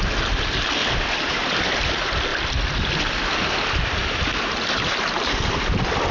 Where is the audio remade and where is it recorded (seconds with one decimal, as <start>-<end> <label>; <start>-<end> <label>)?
0.0-0.8 recorded; 0.8-1.5 remade; 1.5-2.3 recorded; 2.3-3.0 remade; 3.0-6.1 recorded